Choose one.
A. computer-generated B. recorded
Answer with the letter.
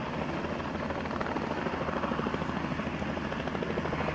B